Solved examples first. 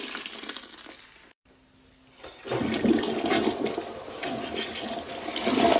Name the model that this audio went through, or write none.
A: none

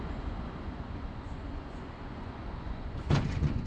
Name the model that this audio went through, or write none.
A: vocoder, Vocos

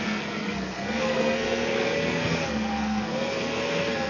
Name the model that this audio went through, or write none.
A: codec, SNAC